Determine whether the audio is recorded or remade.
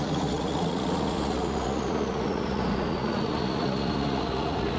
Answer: remade